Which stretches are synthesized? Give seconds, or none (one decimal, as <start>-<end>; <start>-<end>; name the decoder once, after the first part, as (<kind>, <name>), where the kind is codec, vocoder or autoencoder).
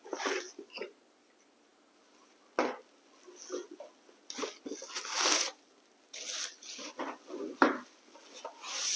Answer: none